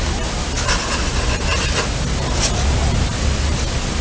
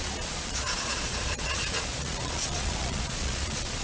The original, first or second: first